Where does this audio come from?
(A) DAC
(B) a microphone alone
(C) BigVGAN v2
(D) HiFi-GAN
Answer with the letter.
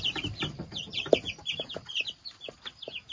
B